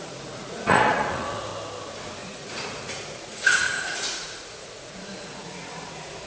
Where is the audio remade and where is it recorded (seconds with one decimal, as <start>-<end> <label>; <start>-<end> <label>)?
0.0-1.5 remade; 1.5-2.2 recorded; 2.2-6.3 remade